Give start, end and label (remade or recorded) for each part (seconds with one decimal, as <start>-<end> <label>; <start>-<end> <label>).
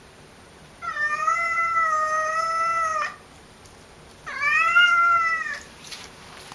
0.0-2.9 remade; 2.9-4.9 recorded; 4.9-6.5 remade